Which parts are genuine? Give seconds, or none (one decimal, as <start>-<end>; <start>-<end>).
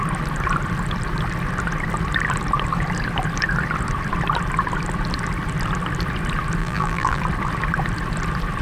0.0-6.6; 7.2-8.6